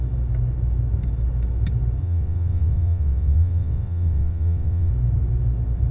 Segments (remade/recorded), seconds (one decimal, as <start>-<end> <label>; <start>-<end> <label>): 0.0-2.0 recorded; 2.0-4.9 remade; 4.9-5.9 recorded